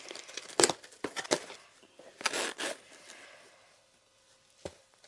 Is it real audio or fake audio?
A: real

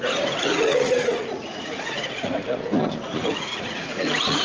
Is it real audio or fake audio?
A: fake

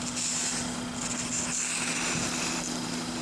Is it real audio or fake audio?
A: real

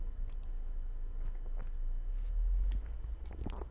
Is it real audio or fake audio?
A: real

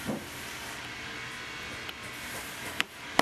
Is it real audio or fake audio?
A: real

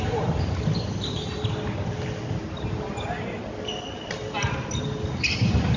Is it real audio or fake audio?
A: real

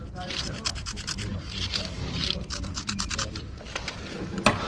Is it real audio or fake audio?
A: fake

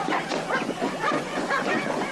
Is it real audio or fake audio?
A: fake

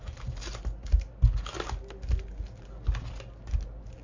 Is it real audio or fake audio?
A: real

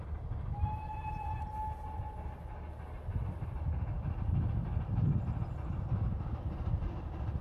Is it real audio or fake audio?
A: real